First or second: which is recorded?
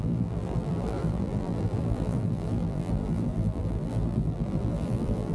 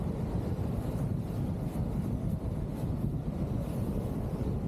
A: second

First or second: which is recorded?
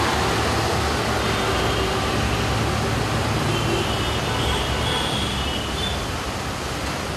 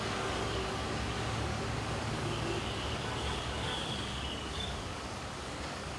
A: first